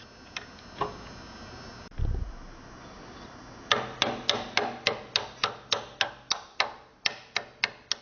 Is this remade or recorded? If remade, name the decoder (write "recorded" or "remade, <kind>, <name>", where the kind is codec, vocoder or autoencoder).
recorded